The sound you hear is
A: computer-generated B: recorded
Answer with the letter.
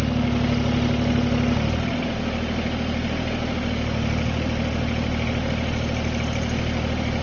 B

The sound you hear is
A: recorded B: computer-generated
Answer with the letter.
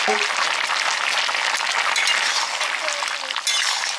A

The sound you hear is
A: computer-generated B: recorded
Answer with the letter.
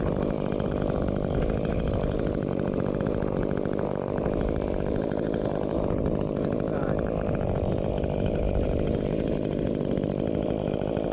A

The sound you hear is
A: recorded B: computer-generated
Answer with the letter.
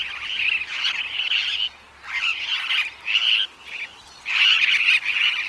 A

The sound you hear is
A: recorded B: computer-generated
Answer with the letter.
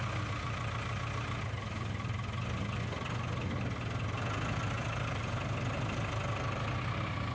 A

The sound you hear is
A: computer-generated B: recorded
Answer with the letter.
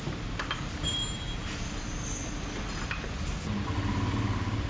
B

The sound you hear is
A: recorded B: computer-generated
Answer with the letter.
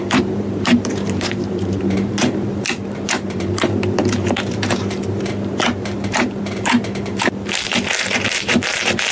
B